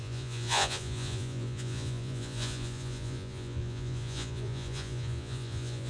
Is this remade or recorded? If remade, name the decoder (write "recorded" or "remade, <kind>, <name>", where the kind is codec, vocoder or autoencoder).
remade, vocoder, Vocos